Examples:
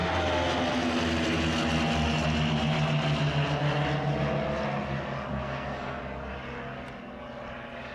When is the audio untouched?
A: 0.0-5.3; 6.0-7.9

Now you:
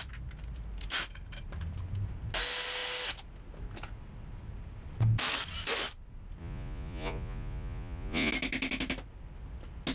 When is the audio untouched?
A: 0.0-6.4; 8.3-9.9

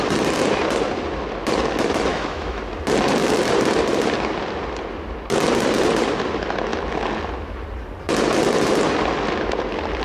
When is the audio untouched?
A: 0.0-2.1; 2.6-10.0

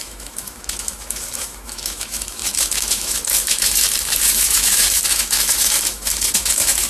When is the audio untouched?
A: none

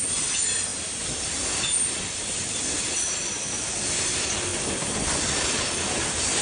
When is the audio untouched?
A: 0.0-6.4

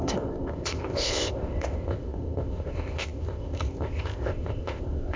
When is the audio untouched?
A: none